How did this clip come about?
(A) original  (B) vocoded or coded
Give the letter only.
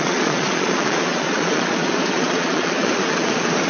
B